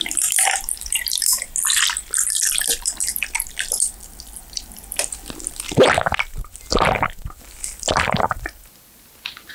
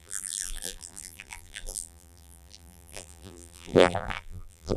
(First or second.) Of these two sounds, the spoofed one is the second